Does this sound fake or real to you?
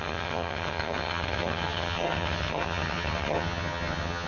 fake